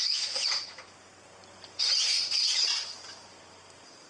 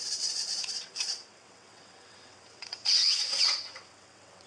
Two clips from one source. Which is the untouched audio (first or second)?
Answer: first